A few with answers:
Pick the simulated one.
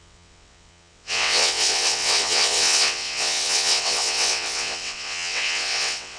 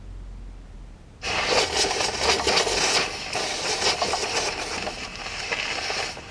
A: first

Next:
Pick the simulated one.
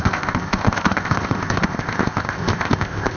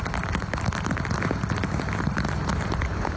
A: first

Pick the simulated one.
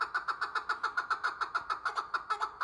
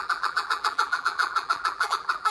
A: second